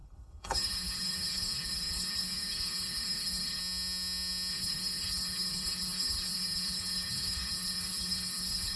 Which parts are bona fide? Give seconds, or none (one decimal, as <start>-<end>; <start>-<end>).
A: 3.6-4.5